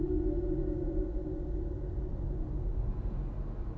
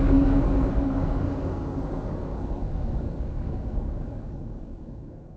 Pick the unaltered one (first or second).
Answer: first